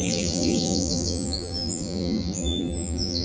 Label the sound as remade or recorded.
remade